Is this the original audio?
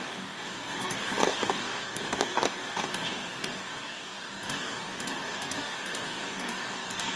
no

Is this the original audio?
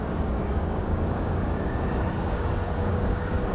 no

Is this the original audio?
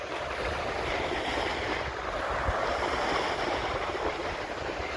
yes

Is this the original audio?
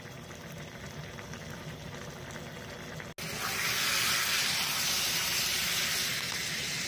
yes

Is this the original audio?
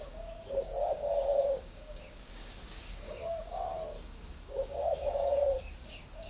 no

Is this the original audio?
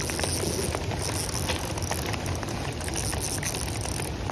yes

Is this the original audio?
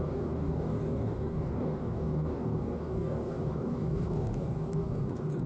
no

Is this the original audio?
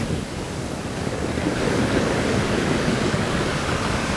no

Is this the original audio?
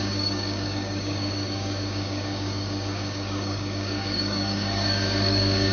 no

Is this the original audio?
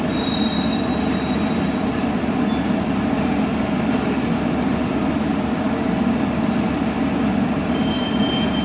yes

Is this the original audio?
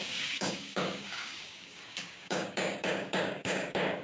no